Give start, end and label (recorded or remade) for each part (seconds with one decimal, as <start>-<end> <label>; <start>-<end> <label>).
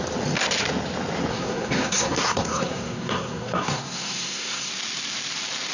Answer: 0.0-1.3 recorded; 1.3-4.7 remade; 4.7-5.7 recorded